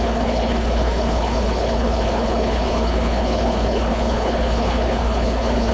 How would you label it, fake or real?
fake